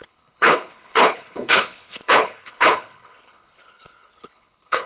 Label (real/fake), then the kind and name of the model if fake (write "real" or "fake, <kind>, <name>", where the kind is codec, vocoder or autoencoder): fake, codec, HILCodec